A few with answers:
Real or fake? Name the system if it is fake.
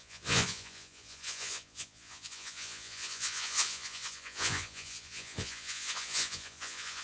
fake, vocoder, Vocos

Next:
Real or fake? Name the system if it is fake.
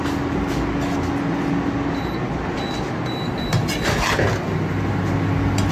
real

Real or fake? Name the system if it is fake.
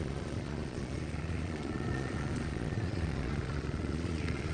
fake, vocoder, Vocos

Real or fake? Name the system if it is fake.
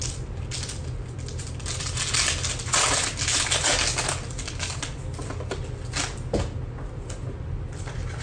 real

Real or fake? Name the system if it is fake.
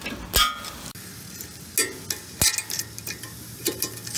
real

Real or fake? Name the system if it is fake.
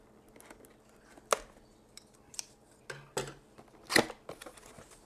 real